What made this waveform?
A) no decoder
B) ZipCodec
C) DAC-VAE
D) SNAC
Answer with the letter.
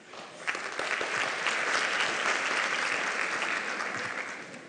A